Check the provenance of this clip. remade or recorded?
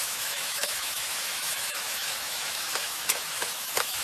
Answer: remade